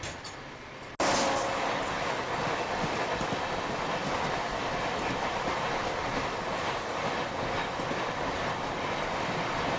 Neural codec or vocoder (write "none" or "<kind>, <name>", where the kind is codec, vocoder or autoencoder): none